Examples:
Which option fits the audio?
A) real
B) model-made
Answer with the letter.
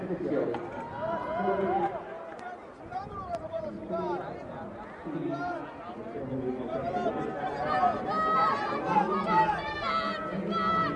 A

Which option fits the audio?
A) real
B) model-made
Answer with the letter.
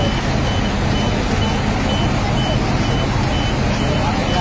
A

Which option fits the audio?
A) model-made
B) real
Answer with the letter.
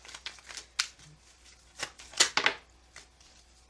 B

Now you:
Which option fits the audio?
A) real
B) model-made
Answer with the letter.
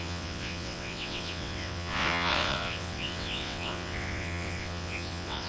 B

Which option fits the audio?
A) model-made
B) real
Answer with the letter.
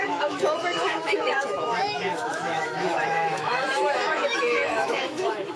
A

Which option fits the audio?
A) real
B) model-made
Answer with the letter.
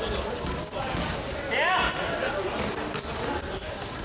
A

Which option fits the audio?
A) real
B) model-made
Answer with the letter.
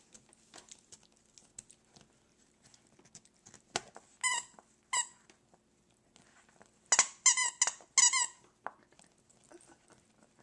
A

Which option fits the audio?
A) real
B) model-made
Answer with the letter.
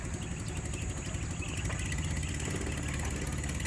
A